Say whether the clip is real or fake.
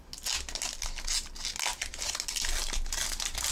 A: real